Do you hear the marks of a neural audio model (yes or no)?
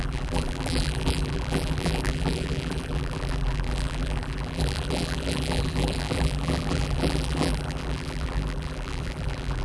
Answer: yes